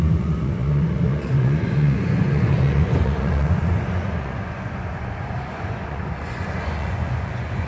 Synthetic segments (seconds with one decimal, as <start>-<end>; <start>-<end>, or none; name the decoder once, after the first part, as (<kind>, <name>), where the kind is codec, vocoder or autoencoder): 0.0-7.7 (vocoder, Vocos)